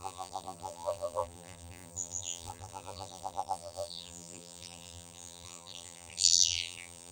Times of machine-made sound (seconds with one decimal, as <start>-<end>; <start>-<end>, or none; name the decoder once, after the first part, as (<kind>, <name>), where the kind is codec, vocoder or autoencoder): 0.0-7.1 (vocoder, BigVGAN v2)